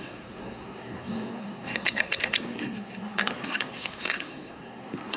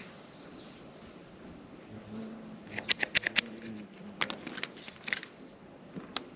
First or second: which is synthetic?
first